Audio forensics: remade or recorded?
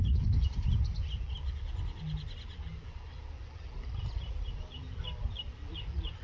recorded